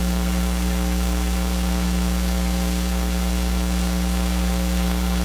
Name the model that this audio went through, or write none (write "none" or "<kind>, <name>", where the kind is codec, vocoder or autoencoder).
codec, SNAC